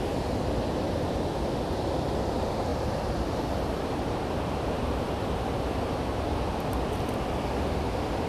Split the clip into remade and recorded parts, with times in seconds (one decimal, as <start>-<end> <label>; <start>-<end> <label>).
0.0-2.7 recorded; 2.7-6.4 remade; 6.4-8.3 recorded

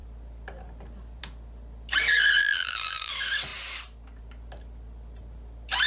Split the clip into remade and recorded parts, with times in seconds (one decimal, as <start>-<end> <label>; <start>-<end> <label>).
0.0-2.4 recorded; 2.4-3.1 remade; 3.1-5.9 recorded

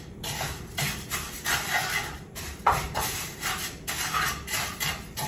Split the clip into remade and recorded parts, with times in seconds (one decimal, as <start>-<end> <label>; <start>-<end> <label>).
0.0-5.3 recorded

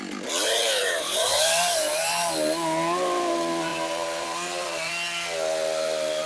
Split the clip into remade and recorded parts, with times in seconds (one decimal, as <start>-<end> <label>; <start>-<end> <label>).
0.0-0.8 recorded; 0.8-2.3 remade; 2.3-3.7 recorded; 3.7-4.9 remade; 4.9-6.3 recorded

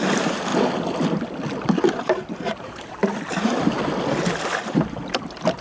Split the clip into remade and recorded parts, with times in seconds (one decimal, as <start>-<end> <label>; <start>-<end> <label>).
0.0-0.5 remade; 0.5-1.8 recorded; 1.8-3.0 remade; 3.0-4.6 recorded; 4.6-5.6 remade